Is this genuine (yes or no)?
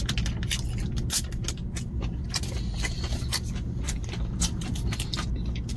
yes